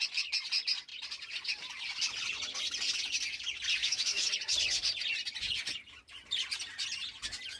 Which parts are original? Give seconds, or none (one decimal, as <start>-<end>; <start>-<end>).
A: 0.0-3.8; 4.3-7.6